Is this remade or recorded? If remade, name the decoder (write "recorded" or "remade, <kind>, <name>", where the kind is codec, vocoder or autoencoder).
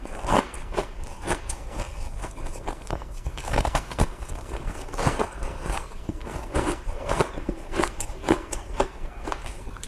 remade, codec, SNAC